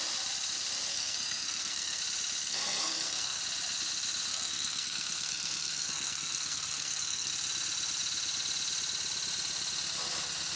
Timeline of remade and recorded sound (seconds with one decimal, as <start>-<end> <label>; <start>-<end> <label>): 0.0-0.9 recorded; 0.9-2.0 remade; 2.0-2.4 recorded; 2.4-3.4 remade; 3.4-4.3 recorded; 4.3-7.3 remade; 7.3-10.6 recorded